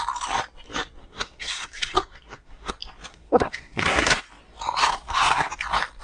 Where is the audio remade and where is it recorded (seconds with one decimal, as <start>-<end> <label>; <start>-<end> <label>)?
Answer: 0.0-1.0 recorded; 1.0-2.7 remade; 2.7-3.1 recorded; 3.1-4.2 remade; 4.2-4.8 recorded; 4.8-5.5 remade; 5.5-6.0 recorded

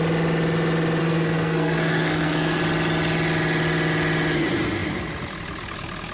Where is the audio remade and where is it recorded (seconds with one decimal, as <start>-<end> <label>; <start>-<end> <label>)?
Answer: 0.0-1.0 recorded; 1.0-2.6 remade; 2.6-6.1 recorded

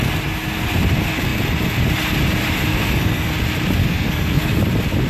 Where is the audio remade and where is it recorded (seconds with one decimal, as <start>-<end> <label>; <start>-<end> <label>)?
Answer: 0.0-2.7 recorded; 2.7-3.3 remade; 3.3-3.8 recorded; 3.8-4.5 remade; 4.5-5.1 recorded

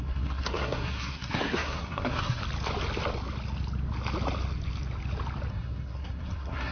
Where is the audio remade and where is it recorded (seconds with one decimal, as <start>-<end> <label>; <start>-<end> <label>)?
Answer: 0.0-2.4 remade; 2.4-5.5 recorded; 5.5-6.7 remade

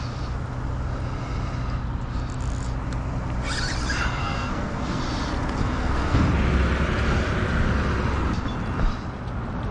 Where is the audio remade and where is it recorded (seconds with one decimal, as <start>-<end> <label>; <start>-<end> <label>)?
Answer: 0.0-4.2 recorded; 4.2-5.0 remade; 5.0-5.6 recorded; 5.6-6.2 remade; 6.2-9.7 recorded